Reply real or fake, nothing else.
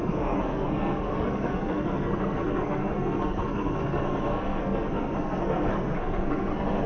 fake